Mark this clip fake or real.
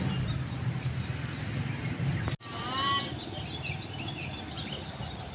real